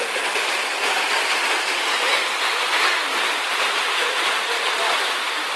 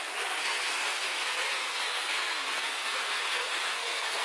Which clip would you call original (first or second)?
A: first